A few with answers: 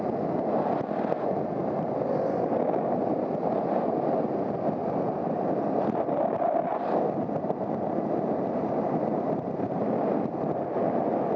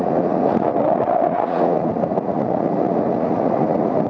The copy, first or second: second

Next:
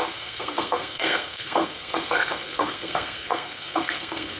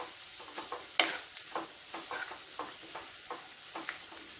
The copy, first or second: first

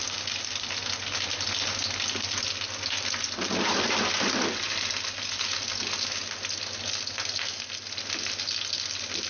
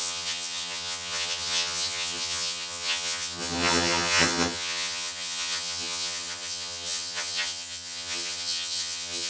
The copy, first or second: second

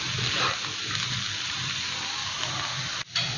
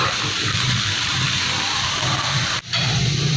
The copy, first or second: second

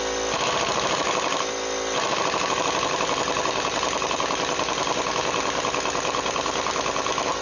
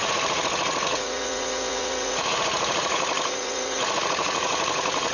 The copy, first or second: second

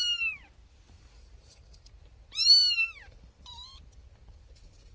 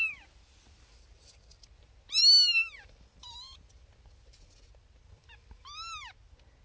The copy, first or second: first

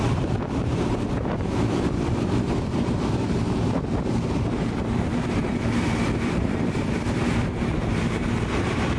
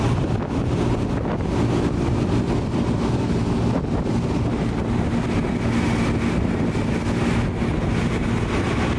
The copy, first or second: first